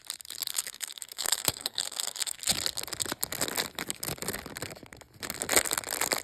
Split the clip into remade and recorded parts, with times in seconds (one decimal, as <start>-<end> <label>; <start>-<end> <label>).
0.0-0.5 recorded; 0.5-2.4 remade; 2.4-6.2 recorded